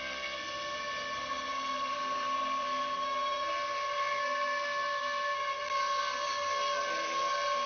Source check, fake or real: fake